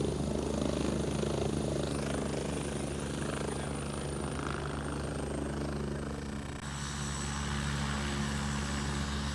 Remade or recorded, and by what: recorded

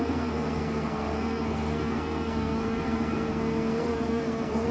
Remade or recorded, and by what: remade, codec, SNAC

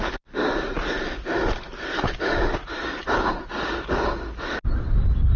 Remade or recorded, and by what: recorded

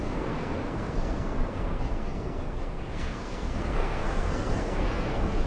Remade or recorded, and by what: remade, codec, SNAC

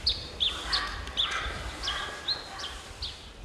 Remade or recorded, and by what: recorded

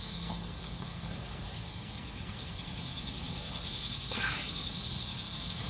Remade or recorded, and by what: remade, codec, SNAC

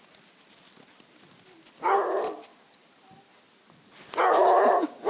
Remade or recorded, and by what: recorded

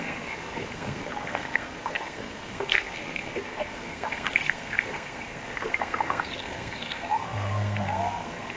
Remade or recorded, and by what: remade, codec, SNAC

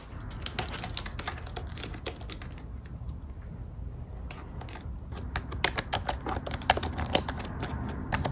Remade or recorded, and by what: recorded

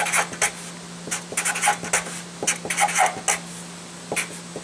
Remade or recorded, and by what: recorded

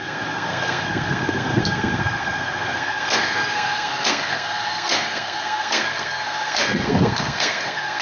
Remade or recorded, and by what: remade, codec, SNAC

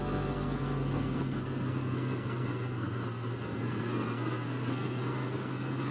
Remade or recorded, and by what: remade, codec, SNAC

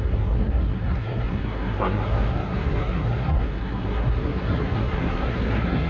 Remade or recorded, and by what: remade, codec, SNAC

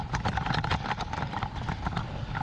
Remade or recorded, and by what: recorded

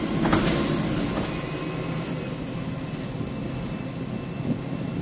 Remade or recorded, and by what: recorded